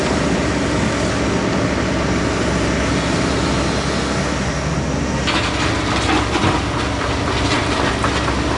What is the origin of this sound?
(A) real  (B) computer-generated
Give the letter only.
A